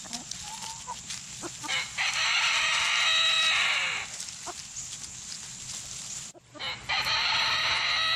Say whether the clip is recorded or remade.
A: recorded